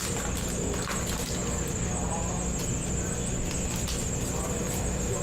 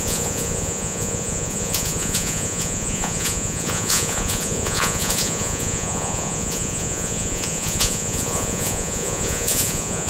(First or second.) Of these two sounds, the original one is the first